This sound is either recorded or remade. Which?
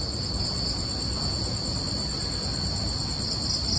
recorded